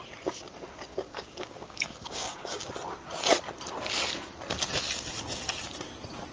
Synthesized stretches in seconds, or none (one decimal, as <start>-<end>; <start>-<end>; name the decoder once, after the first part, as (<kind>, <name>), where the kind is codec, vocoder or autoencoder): 0.9-2.7 (codec, DAC)